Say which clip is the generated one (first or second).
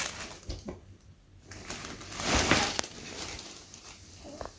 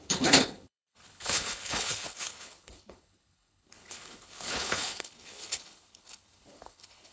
second